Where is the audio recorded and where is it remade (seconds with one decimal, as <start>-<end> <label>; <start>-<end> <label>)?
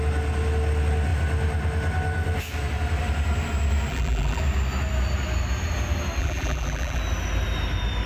0.0-3.9 recorded; 3.9-4.4 remade; 4.4-6.2 recorded; 6.2-7.0 remade; 7.0-8.1 recorded